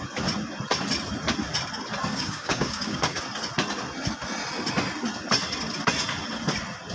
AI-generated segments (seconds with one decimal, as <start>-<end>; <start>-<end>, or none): 2.1-3.2